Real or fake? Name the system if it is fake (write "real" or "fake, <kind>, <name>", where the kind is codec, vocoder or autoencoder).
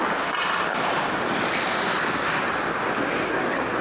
real